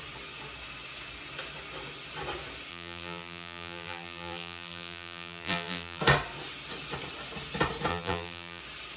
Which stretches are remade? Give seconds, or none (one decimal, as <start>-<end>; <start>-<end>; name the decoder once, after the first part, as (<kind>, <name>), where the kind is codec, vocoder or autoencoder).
2.7-6.0 (vocoder, BigVGAN v2); 7.9-8.6